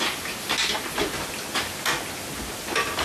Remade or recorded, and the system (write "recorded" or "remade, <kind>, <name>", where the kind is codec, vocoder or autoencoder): recorded